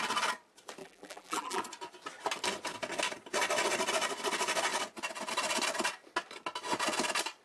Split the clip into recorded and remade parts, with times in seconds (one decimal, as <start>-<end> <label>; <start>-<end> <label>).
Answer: 0.0-0.8 recorded; 0.8-1.6 remade; 1.6-7.4 recorded